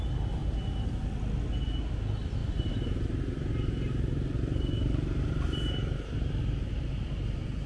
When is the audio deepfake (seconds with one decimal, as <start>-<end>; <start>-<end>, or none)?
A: 2.4-6.9